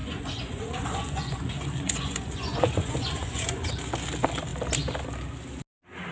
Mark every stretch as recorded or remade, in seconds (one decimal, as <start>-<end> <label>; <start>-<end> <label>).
0.0-3.7 remade; 3.7-6.1 recorded